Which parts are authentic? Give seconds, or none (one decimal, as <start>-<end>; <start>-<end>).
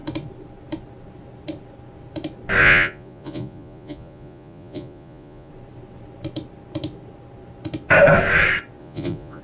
0.0-2.6; 5.5-8.8